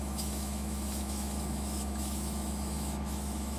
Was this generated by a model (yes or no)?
yes